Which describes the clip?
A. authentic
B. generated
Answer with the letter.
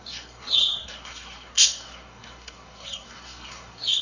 B